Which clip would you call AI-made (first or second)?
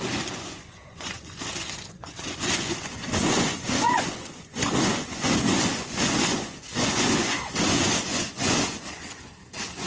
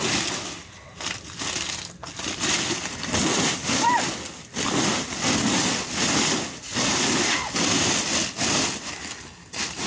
first